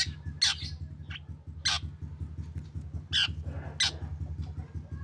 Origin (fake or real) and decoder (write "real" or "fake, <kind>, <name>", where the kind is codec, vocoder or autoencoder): real